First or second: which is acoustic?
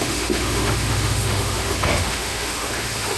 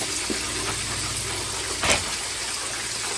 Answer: second